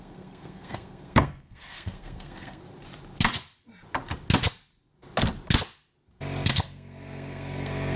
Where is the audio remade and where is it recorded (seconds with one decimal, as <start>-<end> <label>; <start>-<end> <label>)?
0.0-2.6 remade; 2.6-6.5 recorded; 6.5-8.0 remade